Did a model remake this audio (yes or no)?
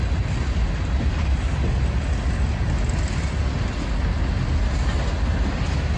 no